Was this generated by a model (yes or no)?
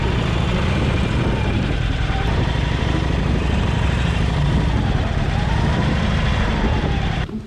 yes